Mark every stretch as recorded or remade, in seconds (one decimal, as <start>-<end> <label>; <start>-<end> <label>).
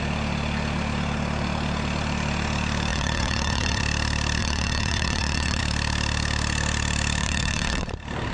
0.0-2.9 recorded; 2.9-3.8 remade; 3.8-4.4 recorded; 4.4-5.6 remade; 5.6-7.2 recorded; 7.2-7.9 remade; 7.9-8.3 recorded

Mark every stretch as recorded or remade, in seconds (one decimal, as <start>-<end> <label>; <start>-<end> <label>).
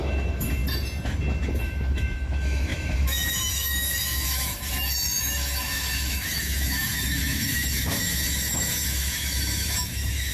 0.0-0.6 remade; 0.6-1.6 recorded; 1.6-10.3 remade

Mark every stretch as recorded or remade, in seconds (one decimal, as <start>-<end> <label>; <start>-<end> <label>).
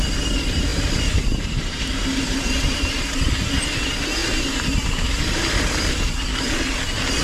0.0-0.7 recorded; 0.7-3.3 remade; 3.3-4.2 recorded; 4.2-5.8 remade; 5.8-7.2 recorded